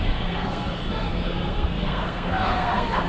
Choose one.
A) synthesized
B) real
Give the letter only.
A